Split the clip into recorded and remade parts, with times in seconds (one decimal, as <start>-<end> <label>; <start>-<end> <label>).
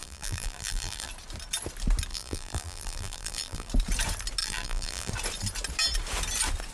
0.0-1.1 remade; 1.1-2.1 recorded; 2.1-3.7 remade; 3.7-4.4 recorded; 4.4-5.1 remade; 5.1-6.7 recorded